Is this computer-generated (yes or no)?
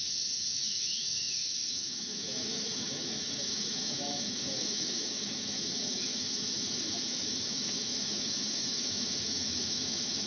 yes